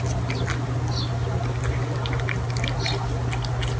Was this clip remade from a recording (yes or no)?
no